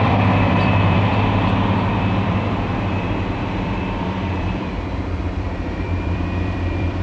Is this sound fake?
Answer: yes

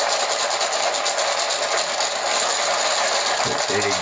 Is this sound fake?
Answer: no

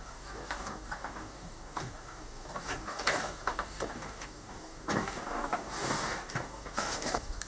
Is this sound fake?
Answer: yes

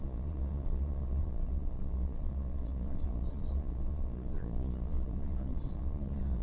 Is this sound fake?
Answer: yes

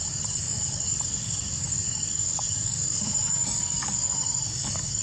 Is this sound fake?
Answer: yes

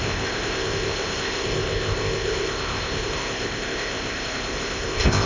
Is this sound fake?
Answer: yes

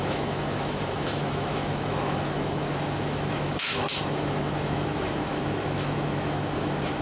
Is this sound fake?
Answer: yes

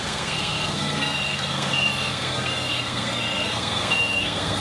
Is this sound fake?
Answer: yes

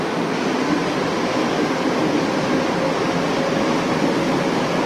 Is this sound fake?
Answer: no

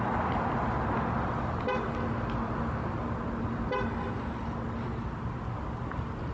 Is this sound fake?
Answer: no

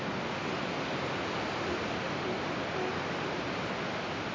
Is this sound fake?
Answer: no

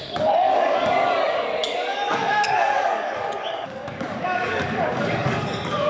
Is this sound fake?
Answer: yes